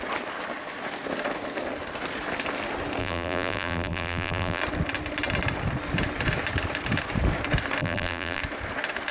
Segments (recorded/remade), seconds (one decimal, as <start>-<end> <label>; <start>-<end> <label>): 0.0-3.0 recorded; 3.0-4.6 remade; 4.6-7.8 recorded; 7.8-8.4 remade; 8.4-9.1 recorded